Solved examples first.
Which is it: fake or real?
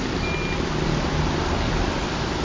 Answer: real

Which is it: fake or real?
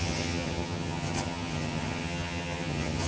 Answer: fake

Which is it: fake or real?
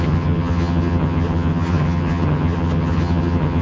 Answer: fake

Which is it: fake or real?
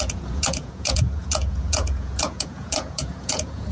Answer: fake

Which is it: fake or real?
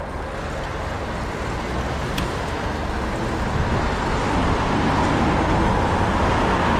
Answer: real